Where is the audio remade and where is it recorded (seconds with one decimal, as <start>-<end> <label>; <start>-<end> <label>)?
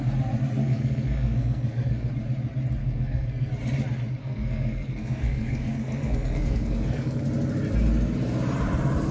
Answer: 0.0-0.6 recorded; 0.6-2.1 remade; 2.1-2.8 recorded; 2.8-3.5 remade; 3.5-4.2 recorded; 4.2-7.2 remade; 7.2-9.1 recorded